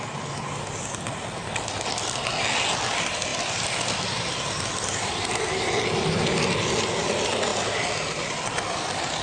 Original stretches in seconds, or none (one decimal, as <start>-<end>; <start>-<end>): 0.0-3.3; 5.6-7.5